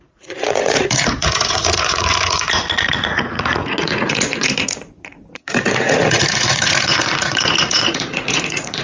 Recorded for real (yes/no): no